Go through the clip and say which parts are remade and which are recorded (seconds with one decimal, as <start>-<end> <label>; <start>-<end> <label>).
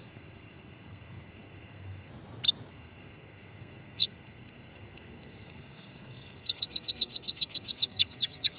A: 0.0-2.1 remade; 2.1-2.7 recorded; 2.7-8.6 remade